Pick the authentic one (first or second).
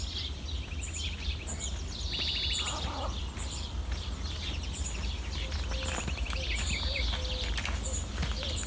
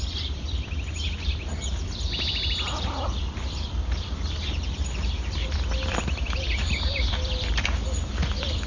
first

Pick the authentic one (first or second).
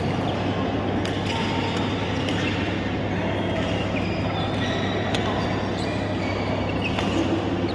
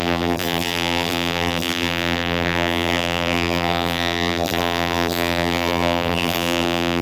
first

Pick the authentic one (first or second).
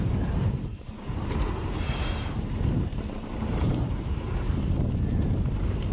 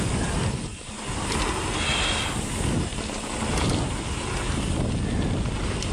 second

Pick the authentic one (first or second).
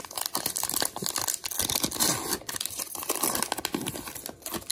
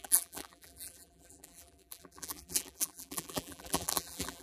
first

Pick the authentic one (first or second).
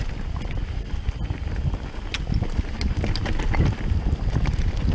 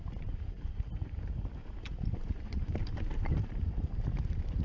first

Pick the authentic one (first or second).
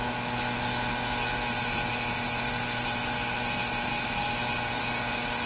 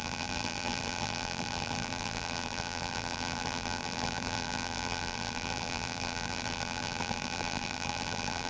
first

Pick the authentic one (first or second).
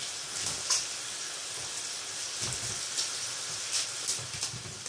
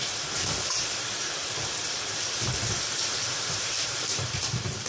first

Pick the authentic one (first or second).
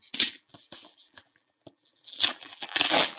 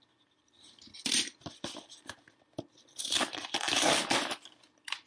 second